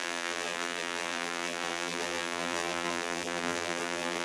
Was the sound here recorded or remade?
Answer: remade